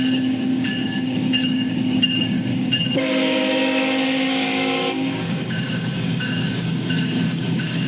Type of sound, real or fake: fake